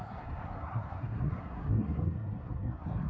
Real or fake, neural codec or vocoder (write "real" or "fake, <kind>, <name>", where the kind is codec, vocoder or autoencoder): fake, codec, SNAC